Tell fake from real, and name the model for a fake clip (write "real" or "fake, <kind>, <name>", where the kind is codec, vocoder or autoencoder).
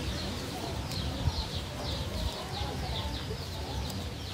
fake, vocoder, BigVGAN v2